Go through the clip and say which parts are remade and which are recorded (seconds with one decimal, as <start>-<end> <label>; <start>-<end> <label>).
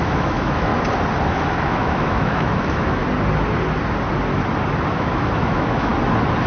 0.0-0.7 remade; 0.7-1.3 recorded; 1.3-3.0 remade; 3.0-4.9 recorded; 4.9-5.9 remade; 5.9-6.5 recorded